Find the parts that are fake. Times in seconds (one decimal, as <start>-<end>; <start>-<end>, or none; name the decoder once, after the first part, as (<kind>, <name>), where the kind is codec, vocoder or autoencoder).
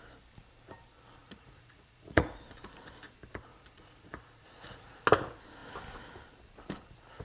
1.2-2.4 (vocoder, Vocos); 3.5-5.0